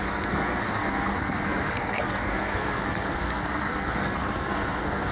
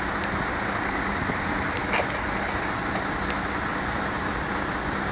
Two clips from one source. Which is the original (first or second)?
second